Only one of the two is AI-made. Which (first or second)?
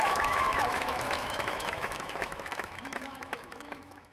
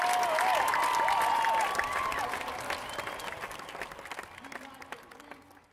first